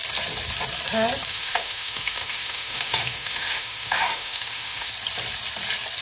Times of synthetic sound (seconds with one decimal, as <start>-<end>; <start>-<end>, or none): 1.3-4.9

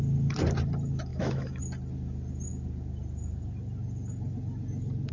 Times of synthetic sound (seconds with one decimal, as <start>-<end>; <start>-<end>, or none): 1.1-1.6

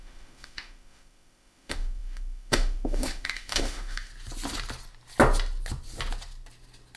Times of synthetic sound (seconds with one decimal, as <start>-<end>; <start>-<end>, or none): 0.0-4.1

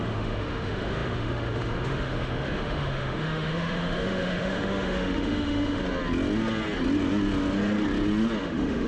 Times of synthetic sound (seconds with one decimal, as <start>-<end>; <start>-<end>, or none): 0.0-5.8; 8.4-8.9

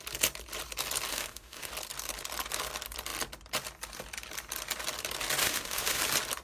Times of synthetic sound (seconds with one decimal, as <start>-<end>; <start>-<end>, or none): 1.1-1.7; 5.4-6.0

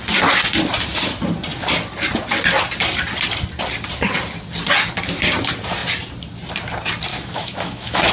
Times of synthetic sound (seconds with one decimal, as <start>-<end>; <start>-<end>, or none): 7.1-8.1